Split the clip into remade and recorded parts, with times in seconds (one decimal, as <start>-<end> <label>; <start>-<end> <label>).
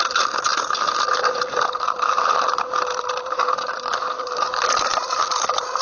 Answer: 0.0-5.8 recorded